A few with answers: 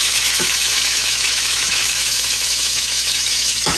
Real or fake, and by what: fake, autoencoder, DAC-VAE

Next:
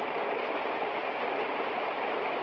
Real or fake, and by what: real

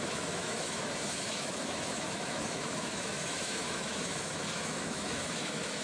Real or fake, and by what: fake, autoencoder, DAC-VAE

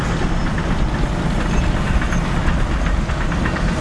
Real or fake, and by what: real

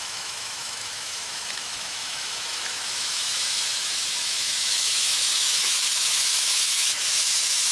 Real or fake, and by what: fake, autoencoder, DAC-VAE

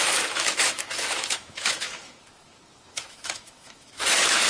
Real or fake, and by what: fake, autoencoder, DAC-VAE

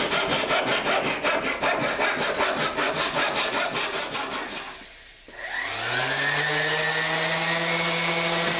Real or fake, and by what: real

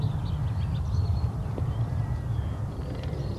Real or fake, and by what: real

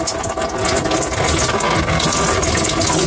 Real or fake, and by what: real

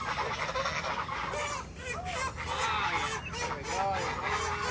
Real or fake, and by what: real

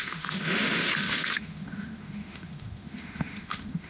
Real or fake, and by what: fake, autoencoder, DAC-VAE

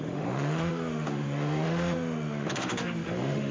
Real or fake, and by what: fake, autoencoder, DAC-VAE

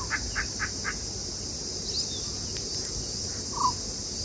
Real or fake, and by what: real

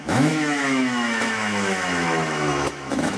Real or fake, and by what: fake, autoencoder, DAC-VAE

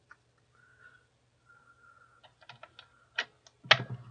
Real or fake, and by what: real